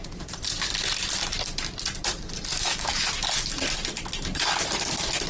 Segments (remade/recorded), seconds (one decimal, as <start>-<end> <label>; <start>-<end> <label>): 0.0-2.5 recorded; 2.5-3.1 remade; 3.1-5.3 recorded